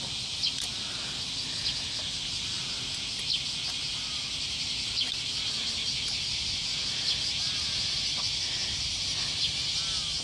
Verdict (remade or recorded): recorded